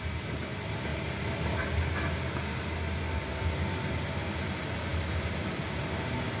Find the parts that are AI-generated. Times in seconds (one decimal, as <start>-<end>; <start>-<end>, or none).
none